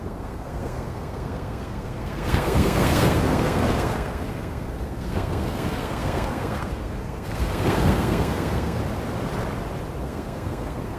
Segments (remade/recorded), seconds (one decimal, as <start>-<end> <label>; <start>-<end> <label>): 0.0-8.8 remade; 8.8-10.0 recorded; 10.0-11.0 remade